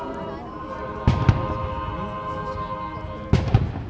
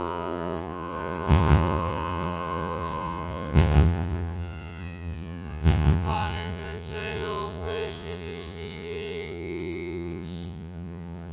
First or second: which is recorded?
first